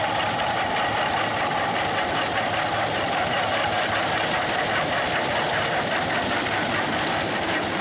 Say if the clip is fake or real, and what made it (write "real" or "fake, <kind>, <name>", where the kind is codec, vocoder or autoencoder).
real